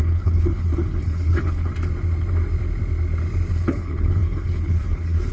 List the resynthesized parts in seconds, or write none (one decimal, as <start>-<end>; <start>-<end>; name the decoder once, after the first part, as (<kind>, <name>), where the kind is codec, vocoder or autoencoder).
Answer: 0.0-1.7 (codec, HILCodec); 3.5-5.3